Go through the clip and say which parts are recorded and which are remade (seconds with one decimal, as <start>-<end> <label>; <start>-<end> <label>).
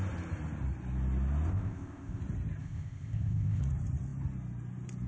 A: 0.0-1.5 recorded; 1.5-2.2 remade; 2.2-2.6 recorded; 2.6-3.6 remade; 3.6-5.1 recorded